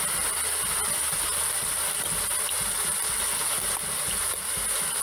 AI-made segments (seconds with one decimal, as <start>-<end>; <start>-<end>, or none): none